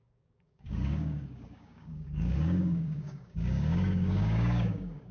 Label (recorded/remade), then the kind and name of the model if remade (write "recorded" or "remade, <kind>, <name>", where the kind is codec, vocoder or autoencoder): remade, codec, DAC